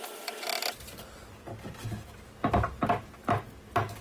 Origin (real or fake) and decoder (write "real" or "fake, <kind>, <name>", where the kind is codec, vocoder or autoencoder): real